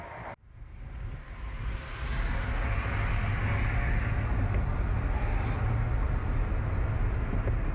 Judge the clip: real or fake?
real